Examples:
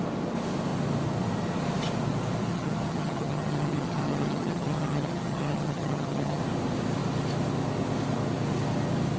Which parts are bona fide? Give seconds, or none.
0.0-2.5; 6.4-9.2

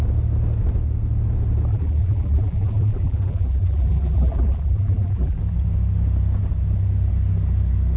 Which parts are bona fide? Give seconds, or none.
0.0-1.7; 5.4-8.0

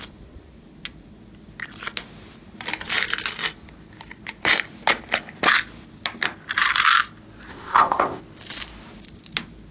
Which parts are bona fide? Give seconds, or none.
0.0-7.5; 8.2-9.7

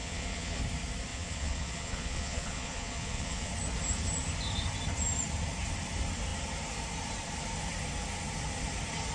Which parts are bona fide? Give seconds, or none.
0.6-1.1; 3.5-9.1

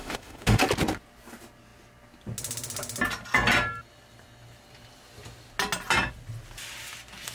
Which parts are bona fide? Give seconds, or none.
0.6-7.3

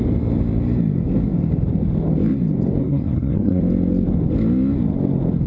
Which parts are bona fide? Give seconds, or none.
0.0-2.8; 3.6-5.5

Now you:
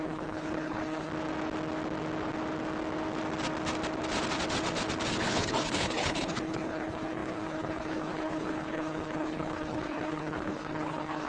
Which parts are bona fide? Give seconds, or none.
1.1-5.1